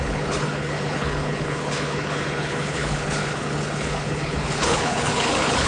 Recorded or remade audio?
remade